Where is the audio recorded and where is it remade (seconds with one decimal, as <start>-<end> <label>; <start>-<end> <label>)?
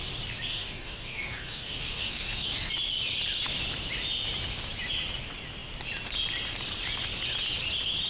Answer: 0.0-0.5 recorded; 0.5-2.7 remade; 2.7-8.1 recorded